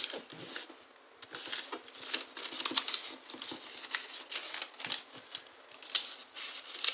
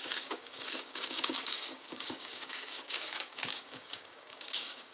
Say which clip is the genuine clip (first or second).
first